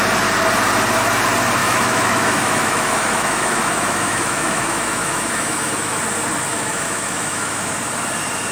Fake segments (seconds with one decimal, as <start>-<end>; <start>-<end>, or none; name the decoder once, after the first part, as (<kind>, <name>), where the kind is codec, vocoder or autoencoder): 1.6-6.0 (autoencoder, DAC-VAE); 6.5-7.7